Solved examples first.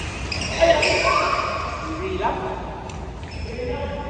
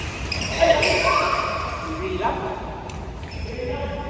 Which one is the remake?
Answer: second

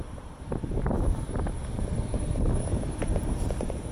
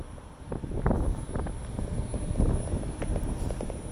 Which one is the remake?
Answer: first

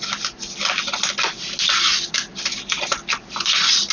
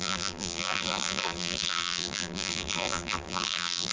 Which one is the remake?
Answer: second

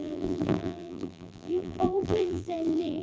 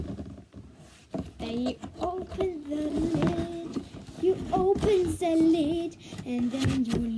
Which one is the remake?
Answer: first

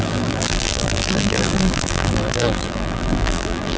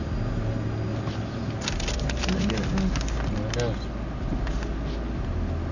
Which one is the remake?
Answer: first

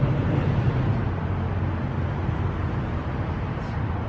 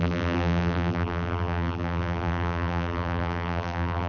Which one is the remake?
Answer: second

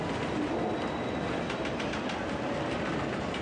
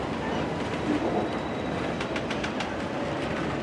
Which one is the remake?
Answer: second